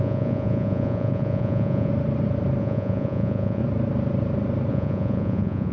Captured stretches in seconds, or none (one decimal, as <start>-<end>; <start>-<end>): 1.9-2.6; 3.6-4.7